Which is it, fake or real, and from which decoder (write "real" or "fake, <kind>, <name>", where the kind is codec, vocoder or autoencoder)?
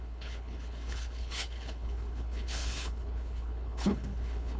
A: fake, codec, HILCodec